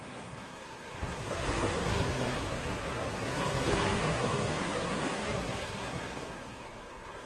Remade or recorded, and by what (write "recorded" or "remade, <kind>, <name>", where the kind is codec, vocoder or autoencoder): remade, codec, SNAC